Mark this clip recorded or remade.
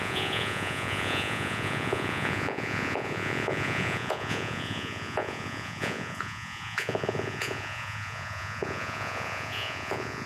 remade